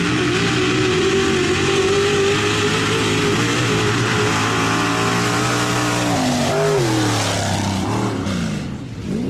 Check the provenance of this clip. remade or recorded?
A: recorded